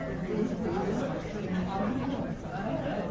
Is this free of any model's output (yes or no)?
yes